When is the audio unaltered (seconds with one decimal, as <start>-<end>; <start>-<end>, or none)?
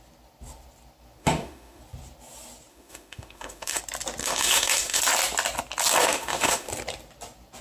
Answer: 0.0-1.2; 1.8-2.7; 3.8-4.2; 5.0-6.0; 6.7-7.6